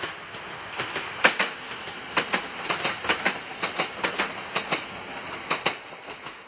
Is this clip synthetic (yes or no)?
no